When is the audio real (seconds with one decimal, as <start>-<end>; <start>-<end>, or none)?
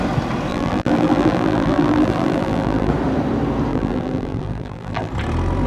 0.0-0.5; 2.9-3.7; 5.1-5.7